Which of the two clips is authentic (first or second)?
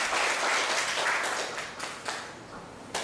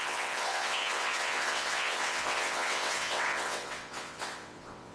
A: first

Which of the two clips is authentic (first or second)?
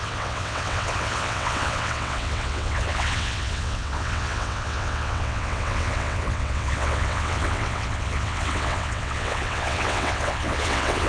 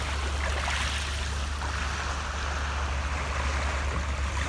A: second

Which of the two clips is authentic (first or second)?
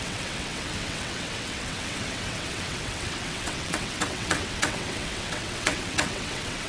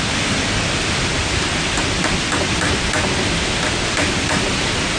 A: second